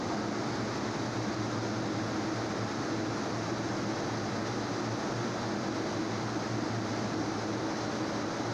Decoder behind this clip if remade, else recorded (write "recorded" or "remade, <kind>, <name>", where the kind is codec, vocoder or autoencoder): recorded